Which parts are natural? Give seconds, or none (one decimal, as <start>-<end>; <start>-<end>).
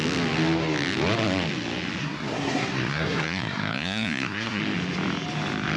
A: 0.0-2.0; 4.6-5.8